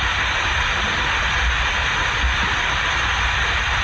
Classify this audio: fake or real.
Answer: real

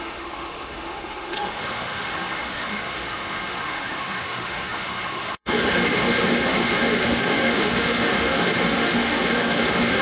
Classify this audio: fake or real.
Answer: fake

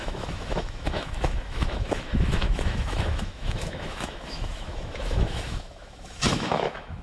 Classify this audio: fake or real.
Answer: fake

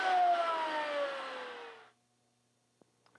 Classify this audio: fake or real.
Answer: real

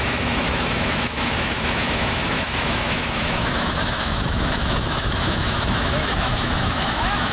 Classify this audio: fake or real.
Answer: fake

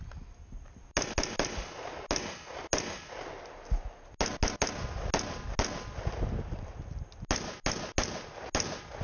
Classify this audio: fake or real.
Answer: real